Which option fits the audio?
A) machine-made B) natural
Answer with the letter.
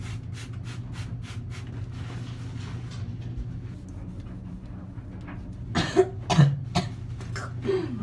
B